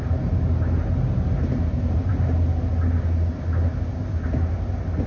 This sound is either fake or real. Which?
real